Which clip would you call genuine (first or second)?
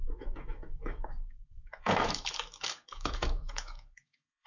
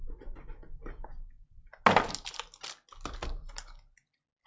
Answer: second